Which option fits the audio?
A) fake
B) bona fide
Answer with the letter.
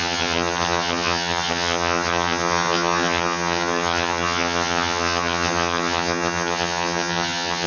A